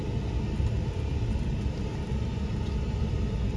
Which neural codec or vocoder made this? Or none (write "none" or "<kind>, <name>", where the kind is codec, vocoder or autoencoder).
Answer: none